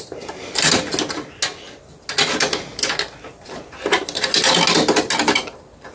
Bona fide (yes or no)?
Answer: yes